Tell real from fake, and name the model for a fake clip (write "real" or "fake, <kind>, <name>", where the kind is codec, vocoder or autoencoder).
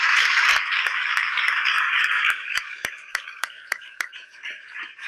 fake, codec, DAC